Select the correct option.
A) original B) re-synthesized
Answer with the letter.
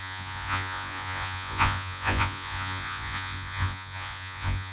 B